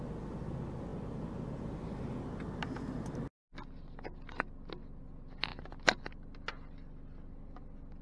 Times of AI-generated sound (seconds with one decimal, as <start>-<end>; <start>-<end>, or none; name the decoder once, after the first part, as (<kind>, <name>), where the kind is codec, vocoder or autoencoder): none